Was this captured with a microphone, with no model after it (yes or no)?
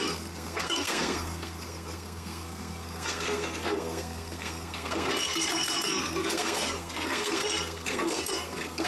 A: no